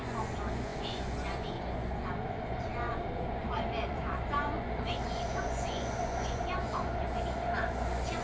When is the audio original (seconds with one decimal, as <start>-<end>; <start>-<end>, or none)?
none